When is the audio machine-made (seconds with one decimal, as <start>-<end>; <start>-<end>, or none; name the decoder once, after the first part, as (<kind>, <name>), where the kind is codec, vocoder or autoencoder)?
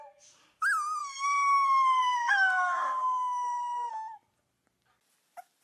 1.0-3.9 (codec, SNAC)